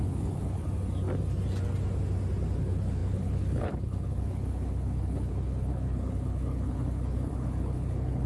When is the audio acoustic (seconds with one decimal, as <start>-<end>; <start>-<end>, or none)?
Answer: 0.6-2.6